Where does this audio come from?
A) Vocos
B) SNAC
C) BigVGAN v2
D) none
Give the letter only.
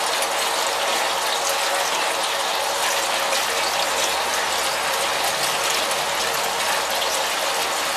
D